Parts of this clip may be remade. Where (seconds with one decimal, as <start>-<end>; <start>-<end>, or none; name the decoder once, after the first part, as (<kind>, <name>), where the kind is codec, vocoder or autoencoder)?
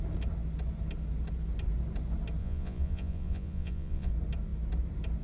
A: 2.4-4.1 (vocoder, Vocos)